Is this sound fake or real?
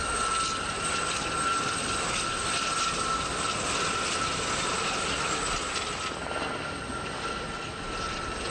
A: real